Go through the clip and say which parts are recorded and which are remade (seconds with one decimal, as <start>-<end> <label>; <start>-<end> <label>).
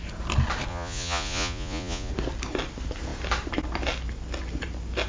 0.0-0.7 recorded; 0.7-2.1 remade; 2.1-5.1 recorded